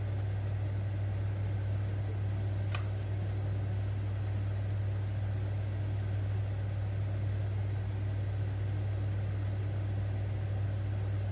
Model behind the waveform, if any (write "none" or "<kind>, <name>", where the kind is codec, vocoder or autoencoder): none